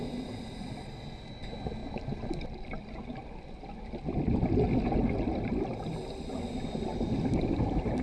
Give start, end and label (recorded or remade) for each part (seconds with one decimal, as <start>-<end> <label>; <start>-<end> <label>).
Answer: 0.0-1.8 recorded; 1.8-2.8 remade; 2.8-8.0 recorded